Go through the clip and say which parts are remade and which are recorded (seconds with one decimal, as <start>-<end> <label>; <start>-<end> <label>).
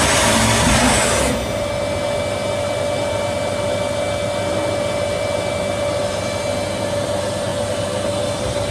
0.0-8.7 recorded